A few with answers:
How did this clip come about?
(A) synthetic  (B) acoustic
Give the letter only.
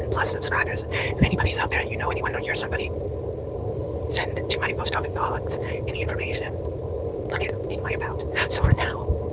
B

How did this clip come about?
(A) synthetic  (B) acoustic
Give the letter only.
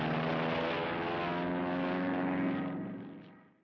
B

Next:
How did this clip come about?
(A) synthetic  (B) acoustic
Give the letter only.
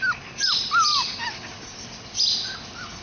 B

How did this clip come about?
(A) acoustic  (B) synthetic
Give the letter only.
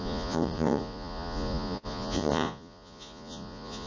B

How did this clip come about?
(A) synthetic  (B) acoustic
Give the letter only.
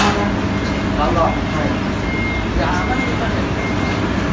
B